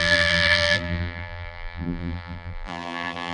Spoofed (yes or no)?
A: yes